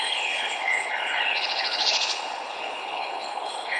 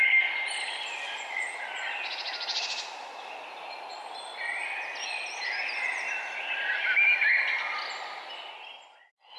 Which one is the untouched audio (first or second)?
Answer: second